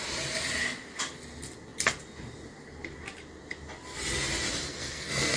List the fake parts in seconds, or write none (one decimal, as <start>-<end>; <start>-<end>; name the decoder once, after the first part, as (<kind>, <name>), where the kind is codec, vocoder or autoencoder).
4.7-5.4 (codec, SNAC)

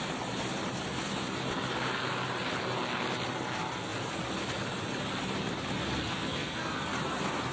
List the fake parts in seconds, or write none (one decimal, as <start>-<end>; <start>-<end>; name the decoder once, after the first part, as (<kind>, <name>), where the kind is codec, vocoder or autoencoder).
6.1-6.7 (codec, SNAC)

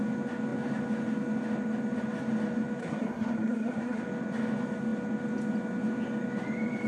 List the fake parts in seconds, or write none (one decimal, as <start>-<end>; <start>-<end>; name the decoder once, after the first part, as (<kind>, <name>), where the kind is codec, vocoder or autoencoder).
2.8-4.0 (codec, SNAC)